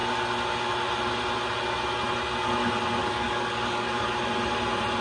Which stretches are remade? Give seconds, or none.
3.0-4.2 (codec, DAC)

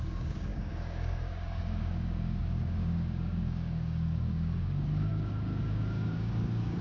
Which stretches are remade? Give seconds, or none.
0.0-6.8 (codec, DAC)

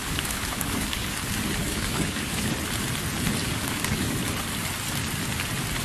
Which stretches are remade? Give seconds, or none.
0.0-1.2 (codec, DAC); 1.6-2.5; 3.4-4.2

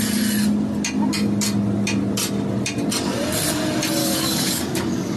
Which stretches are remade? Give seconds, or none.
4.0-5.2 (codec, DAC)

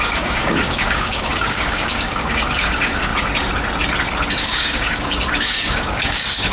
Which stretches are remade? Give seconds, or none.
0.0-3.1 (codec, DAC); 4.4-6.5

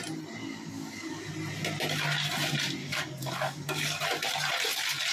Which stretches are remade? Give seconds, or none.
0.4-1.3 (codec, DAC); 2.8-4.0